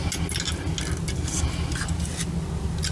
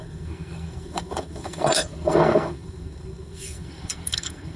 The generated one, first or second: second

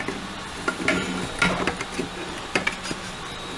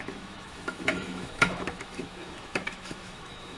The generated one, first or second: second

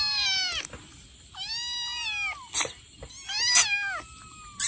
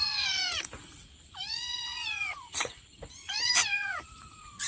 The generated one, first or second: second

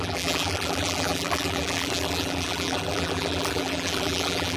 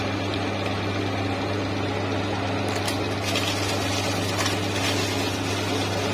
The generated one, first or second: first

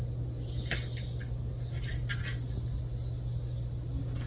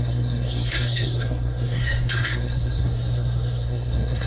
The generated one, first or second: second